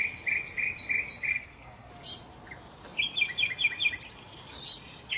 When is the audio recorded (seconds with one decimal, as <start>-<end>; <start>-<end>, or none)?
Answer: 0.0-1.3; 1.9-5.2